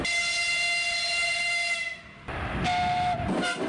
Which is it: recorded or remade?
recorded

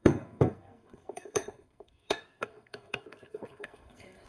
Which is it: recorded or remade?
remade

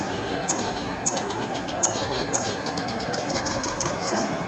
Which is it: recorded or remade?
remade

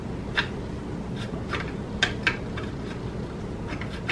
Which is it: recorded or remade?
recorded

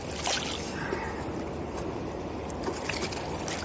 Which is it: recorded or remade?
recorded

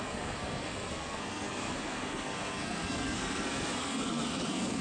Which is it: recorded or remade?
remade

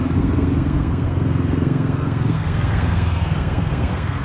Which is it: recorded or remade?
remade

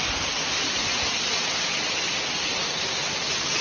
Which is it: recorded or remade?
recorded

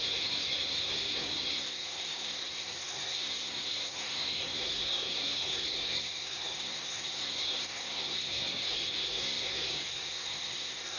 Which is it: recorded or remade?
remade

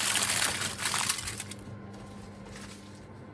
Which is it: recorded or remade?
recorded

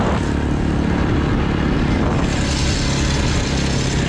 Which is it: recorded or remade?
recorded